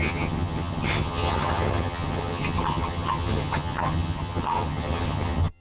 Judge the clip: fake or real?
fake